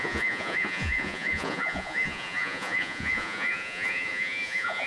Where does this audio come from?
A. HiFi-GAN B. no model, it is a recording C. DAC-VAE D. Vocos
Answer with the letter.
D